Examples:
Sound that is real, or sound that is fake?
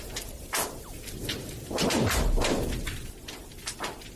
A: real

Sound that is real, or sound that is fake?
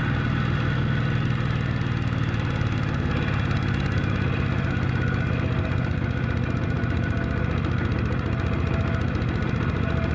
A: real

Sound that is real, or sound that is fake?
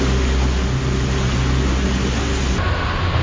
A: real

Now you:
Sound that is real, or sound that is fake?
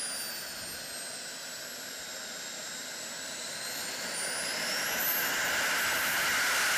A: real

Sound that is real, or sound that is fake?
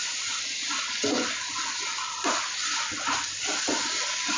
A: real